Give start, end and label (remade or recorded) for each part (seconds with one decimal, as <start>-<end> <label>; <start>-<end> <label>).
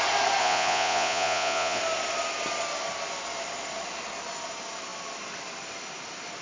0.0-0.4 recorded; 0.4-1.8 remade; 1.8-6.4 recorded